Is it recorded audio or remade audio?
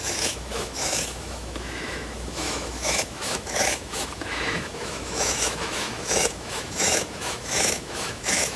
remade